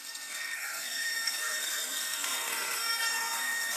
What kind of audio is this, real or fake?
fake